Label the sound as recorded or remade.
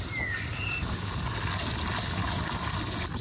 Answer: recorded